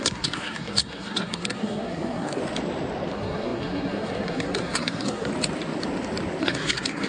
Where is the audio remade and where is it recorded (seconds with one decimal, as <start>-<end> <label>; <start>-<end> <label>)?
0.0-2.4 remade; 2.4-3.1 recorded; 3.1-5.3 remade; 5.3-6.4 recorded; 6.4-7.1 remade